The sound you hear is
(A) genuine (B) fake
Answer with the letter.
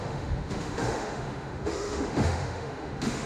B